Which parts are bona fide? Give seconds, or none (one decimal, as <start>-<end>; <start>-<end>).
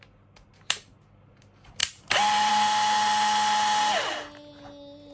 0.0-1.8; 2.5-5.1